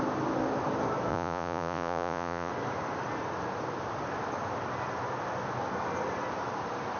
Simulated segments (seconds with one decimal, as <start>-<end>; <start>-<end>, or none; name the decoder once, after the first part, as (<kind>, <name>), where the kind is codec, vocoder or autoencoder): 1.1-2.5 (vocoder, Vocos)